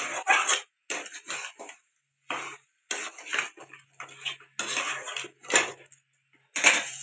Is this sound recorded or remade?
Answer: recorded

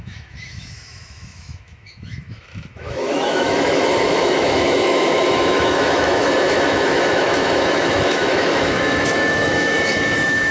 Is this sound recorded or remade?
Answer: remade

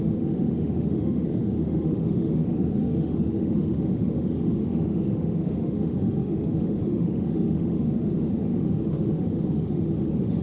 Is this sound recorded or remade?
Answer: remade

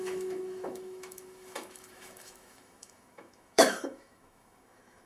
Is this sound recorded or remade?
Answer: remade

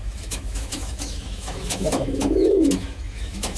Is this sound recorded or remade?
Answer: remade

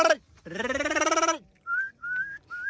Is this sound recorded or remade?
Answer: recorded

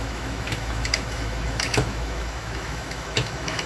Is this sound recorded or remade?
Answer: remade